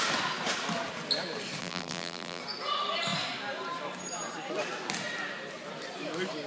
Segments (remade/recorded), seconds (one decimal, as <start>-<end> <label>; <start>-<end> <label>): 0.0-1.6 recorded; 1.6-2.4 remade; 2.4-6.5 recorded